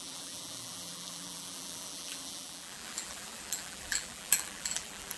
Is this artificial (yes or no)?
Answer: yes